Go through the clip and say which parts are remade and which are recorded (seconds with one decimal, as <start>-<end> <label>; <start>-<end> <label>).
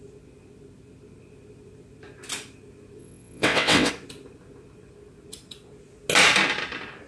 0.0-3.0 recorded; 3.0-3.9 remade; 3.9-7.1 recorded